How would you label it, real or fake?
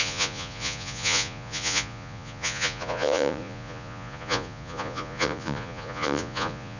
fake